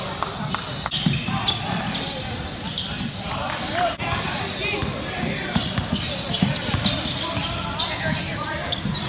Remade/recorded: recorded